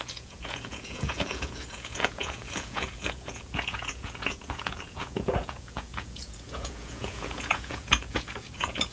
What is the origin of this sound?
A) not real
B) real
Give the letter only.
A